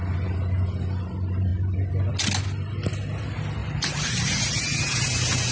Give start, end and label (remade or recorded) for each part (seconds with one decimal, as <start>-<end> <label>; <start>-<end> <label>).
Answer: 0.0-3.6 recorded; 3.6-4.6 remade; 4.6-5.5 recorded